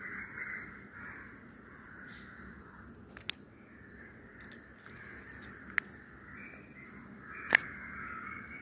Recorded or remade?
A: recorded